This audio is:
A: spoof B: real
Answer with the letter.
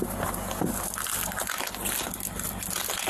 B